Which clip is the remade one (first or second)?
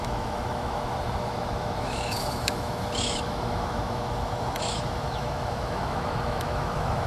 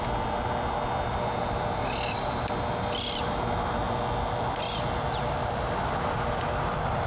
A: first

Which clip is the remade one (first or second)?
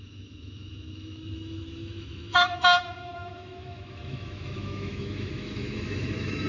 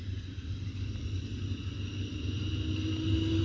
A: first